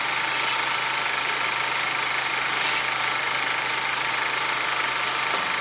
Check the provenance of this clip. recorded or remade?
recorded